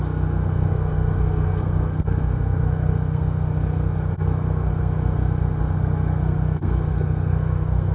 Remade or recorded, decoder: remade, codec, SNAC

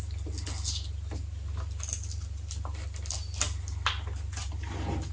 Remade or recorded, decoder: recorded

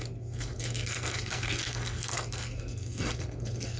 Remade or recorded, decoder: remade, codec, SNAC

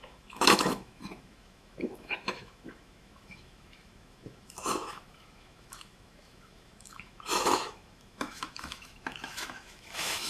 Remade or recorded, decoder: remade, autoencoder, DAC-VAE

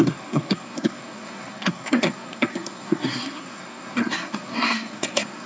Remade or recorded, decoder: remade, codec, SNAC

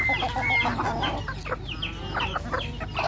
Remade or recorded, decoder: recorded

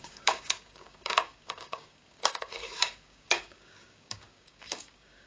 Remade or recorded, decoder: remade, codec, DAC